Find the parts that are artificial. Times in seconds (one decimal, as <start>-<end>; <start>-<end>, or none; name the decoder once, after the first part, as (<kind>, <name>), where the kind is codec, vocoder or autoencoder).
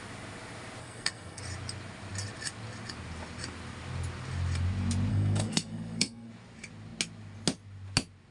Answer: 0.8-1.4 (codec, SNAC); 5.1-6.3